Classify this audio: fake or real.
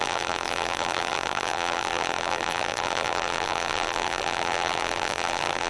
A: fake